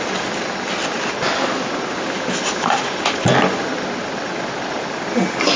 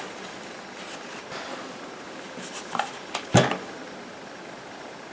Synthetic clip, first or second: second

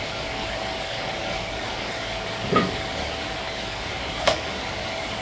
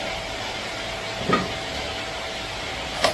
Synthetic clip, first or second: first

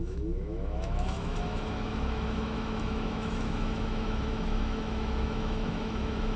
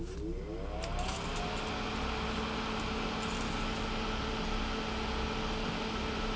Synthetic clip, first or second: first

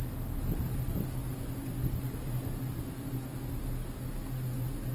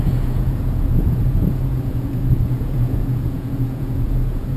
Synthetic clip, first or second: second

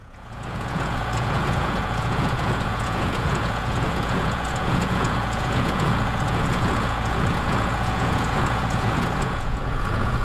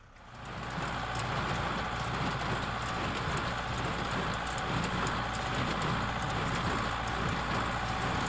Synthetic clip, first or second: first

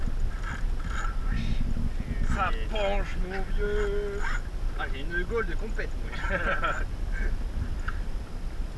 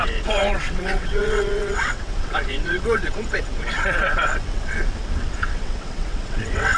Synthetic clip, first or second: second